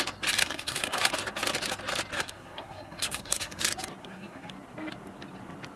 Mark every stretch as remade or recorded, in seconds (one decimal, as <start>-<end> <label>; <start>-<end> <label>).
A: 0.0-0.4 recorded; 0.4-1.1 remade; 1.1-2.1 recorded; 2.1-3.6 remade; 3.6-4.0 recorded; 4.0-4.5 remade; 4.5-5.8 recorded